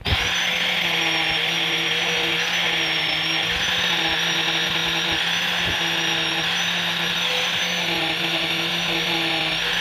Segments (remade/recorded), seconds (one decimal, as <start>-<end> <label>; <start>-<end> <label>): 0.0-9.8 recorded